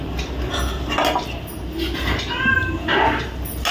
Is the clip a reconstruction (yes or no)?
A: no